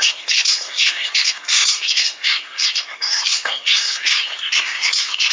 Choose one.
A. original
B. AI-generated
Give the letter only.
B